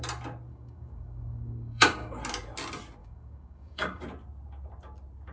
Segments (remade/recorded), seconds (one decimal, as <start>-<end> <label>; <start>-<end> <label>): 0.0-0.5 recorded; 0.5-2.2 remade; 2.2-3.0 recorded; 3.0-4.0 remade; 4.0-5.3 recorded